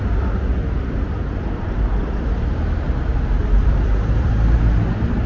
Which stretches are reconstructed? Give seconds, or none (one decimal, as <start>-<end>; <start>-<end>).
3.1-4.3

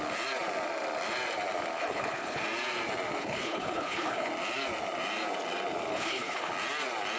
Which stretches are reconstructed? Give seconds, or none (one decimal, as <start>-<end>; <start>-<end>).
1.8-2.4; 3.2-4.3; 5.9-6.5

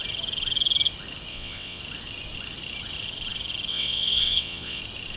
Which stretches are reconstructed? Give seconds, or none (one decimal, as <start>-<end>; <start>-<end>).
1.3-1.8; 3.7-4.8